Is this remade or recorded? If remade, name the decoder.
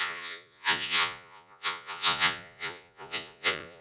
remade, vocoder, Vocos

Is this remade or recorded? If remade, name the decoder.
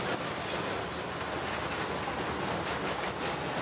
recorded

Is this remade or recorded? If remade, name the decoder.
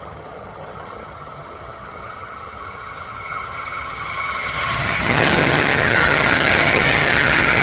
remade, vocoder, HiFi-GAN